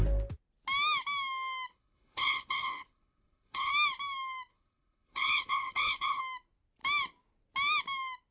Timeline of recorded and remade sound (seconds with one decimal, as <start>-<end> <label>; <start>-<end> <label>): 0.0-1.7 recorded; 1.7-3.7 remade; 3.7-4.5 recorded; 4.5-6.2 remade; 6.2-8.3 recorded